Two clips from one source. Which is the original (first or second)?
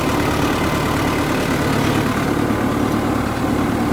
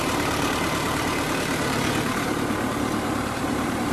first